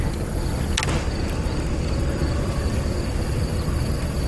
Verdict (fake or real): real